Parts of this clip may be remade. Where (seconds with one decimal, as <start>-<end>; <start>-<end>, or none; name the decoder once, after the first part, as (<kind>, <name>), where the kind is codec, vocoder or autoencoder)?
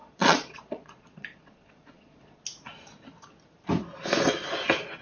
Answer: 0.0-2.4 (vocoder, Vocos)